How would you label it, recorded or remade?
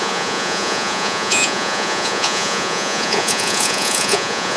remade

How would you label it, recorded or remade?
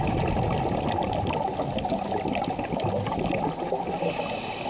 recorded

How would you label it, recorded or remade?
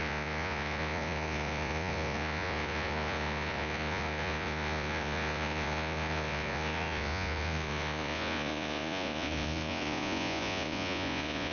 remade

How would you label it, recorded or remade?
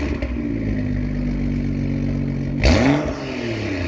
recorded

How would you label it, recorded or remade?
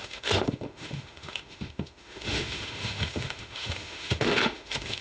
remade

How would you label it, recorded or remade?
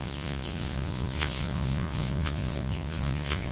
remade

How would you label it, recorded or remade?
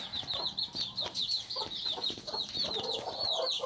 recorded